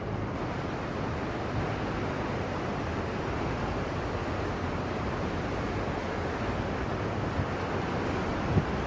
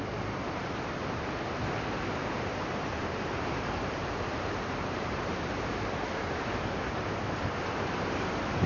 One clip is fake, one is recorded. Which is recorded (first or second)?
first